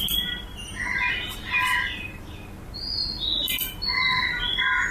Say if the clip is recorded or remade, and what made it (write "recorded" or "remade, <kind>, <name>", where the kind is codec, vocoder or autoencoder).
recorded